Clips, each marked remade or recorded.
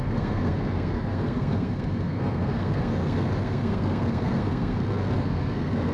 remade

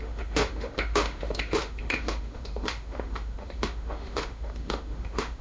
remade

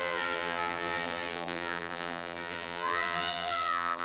remade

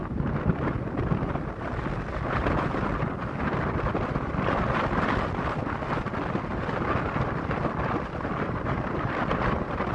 recorded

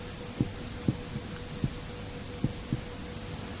recorded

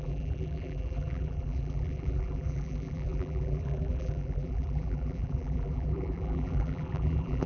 remade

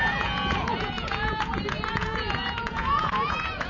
remade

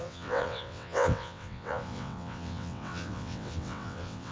remade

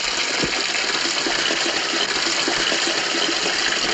recorded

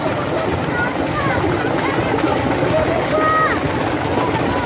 recorded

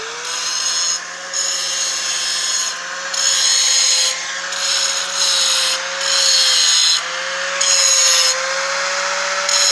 recorded